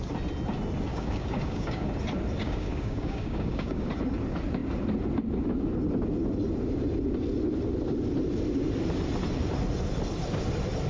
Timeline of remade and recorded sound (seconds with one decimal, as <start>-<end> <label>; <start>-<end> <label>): 0.0-0.9 recorded; 0.9-1.9 remade; 1.9-2.4 recorded; 2.4-3.9 remade; 3.9-10.9 recorded